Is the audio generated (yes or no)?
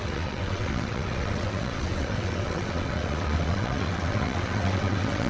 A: yes